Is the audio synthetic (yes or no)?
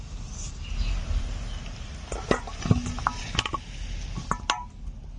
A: no